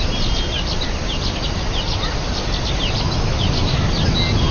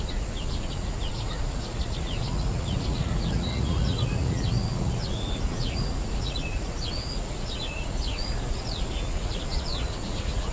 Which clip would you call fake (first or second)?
second